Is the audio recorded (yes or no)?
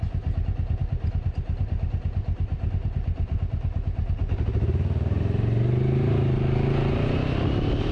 yes